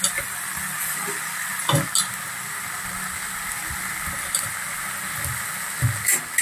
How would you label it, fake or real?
real